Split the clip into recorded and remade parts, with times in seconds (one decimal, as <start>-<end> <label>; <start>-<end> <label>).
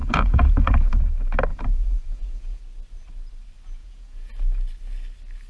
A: 0.0-1.0 remade; 1.0-1.5 recorded; 1.5-2.6 remade; 2.6-3.8 recorded; 3.8-4.3 remade; 4.3-5.5 recorded